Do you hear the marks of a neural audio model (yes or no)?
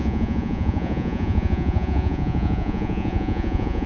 yes